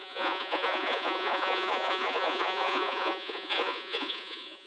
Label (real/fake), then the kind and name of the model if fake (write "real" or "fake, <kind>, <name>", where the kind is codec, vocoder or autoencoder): fake, vocoder, Vocos